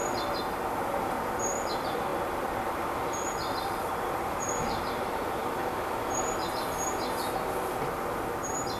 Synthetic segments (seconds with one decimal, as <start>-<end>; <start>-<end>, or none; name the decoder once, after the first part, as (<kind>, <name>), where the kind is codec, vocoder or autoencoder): 1.3-5.4 (vocoder, BigVGAN v2)